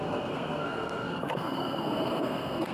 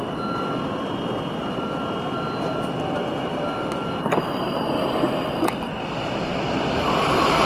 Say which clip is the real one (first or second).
second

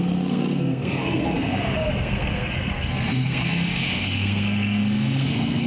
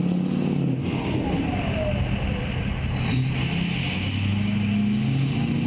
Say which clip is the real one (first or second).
second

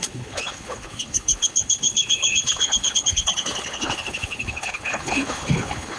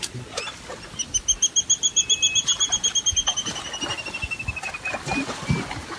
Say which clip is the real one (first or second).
second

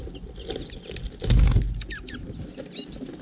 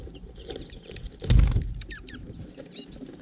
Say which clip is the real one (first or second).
first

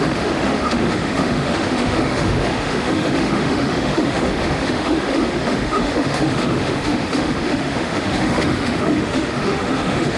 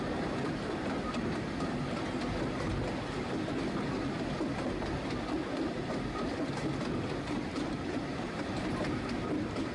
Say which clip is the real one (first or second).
second